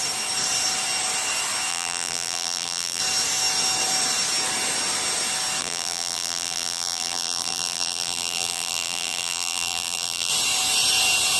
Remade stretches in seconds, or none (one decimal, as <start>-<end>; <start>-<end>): 1.7-3.0; 5.6-10.3